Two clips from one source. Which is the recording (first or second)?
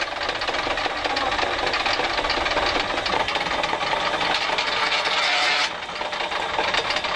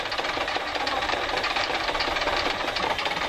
first